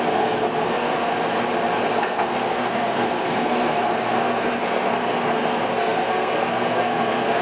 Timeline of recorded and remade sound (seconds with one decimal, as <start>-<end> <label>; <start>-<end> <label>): 0.0-1.1 remade; 1.1-1.9 recorded; 1.9-7.4 remade